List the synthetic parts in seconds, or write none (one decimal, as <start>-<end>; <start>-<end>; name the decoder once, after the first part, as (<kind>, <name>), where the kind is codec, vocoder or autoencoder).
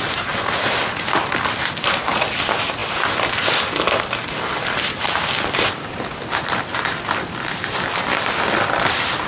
none